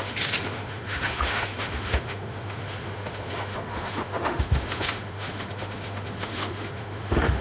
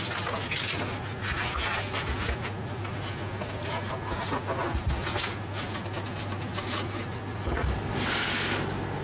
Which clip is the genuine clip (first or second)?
second